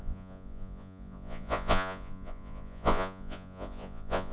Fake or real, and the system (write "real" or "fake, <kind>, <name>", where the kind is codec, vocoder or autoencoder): fake, vocoder, Vocos